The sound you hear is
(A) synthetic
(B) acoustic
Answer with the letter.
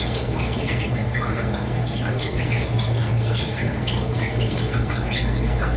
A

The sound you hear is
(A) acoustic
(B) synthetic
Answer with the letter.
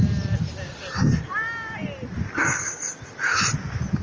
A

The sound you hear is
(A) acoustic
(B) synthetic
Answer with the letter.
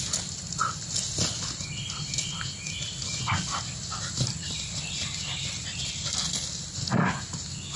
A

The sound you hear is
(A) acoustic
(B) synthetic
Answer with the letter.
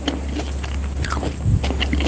A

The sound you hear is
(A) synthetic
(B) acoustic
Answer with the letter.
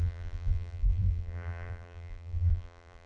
A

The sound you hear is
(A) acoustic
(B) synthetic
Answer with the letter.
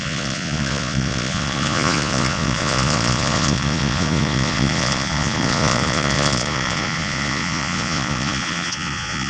B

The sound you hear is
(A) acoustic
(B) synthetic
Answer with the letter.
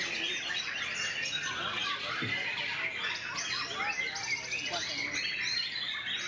A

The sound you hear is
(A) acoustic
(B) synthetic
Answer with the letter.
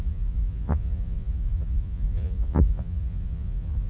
B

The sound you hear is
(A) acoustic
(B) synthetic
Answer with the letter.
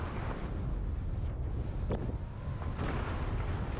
A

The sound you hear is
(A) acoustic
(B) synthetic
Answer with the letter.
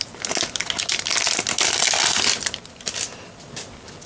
A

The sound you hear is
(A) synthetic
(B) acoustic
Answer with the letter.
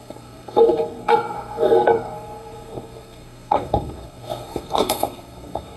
A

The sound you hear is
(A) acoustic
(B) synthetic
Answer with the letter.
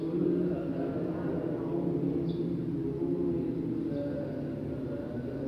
A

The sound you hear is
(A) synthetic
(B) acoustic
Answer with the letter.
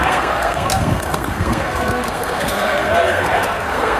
A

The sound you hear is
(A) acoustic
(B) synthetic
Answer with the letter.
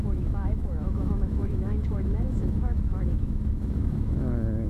B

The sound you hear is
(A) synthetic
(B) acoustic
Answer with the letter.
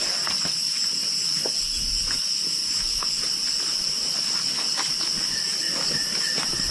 B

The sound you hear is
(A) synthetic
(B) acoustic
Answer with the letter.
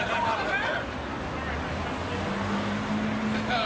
B